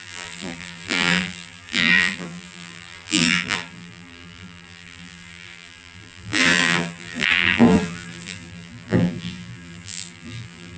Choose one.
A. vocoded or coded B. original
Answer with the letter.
A